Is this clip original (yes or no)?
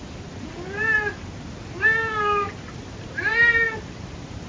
yes